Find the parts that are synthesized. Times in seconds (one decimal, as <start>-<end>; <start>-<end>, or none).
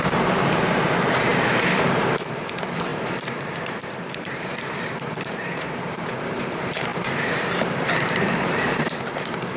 0.0-9.6